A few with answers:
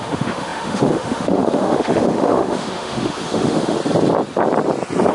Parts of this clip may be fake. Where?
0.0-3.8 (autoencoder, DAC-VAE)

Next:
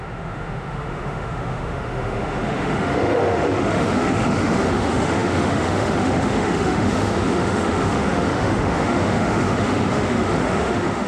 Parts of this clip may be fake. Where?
0.0-11.1 (autoencoder, DAC-VAE)